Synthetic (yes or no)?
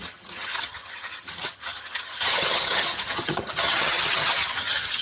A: yes